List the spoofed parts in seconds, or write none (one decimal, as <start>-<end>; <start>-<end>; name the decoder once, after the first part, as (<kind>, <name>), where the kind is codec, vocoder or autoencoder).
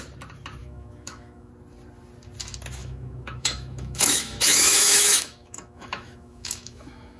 0.6-1.5 (autoencoder, DAC-VAE); 2.8-7.2